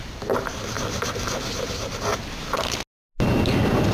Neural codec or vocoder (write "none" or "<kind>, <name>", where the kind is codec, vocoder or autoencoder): none